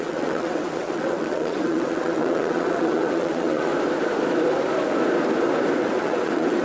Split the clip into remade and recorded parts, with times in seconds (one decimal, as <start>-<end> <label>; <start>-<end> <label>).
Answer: 0.0-3.7 remade; 3.7-5.8 recorded; 5.8-6.6 remade